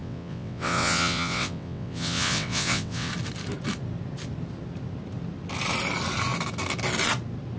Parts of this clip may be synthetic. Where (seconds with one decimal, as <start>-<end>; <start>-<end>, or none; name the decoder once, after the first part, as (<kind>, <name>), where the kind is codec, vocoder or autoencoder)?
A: 0.0-3.1 (vocoder, WaveNeXt)